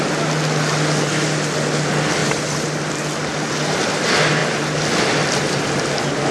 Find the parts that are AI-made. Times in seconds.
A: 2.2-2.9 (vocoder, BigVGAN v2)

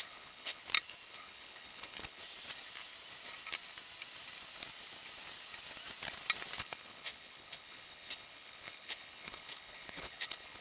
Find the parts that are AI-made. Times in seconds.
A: 0.0-0.6 (codec, HILCodec); 1.1-2.2; 6.6-10.6

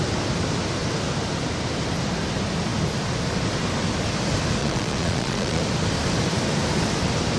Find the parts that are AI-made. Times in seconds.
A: 4.6-5.6 (vocoder, Vocos)

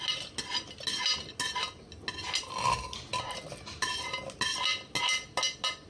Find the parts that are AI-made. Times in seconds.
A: none

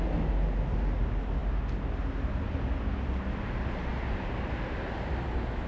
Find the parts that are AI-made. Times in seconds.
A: none

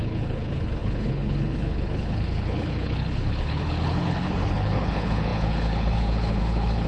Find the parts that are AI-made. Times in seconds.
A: 0.0-6.9 (codec, HILCodec)

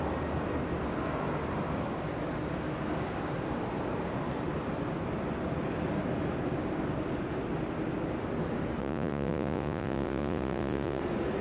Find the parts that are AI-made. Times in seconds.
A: 8.8-11.0 (vocoder, Vocos)

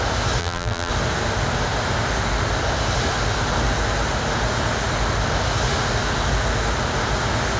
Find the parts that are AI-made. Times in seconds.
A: 0.4-0.9 (vocoder, BigVGAN v2)